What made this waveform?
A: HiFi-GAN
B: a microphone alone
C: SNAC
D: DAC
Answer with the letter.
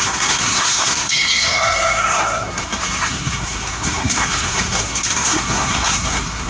C